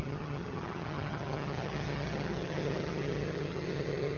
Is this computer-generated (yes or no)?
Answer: yes